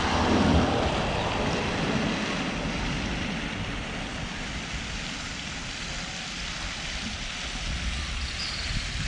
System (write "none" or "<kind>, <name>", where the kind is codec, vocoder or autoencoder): none